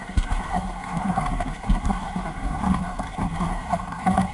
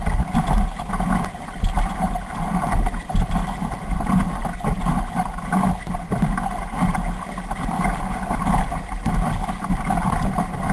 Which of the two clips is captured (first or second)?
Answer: second